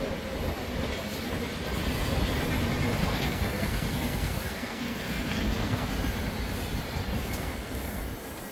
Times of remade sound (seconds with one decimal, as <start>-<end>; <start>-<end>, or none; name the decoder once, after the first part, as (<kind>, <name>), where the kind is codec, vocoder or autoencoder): 3.0-5.9 (codec, SNAC); 7.2-8.0